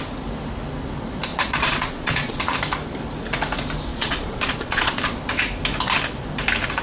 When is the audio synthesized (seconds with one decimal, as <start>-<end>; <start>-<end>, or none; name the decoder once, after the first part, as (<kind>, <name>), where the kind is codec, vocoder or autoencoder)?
1.3-2.4 (vocoder, Vocos); 3.9-5.0